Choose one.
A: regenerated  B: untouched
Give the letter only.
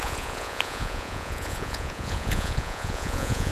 A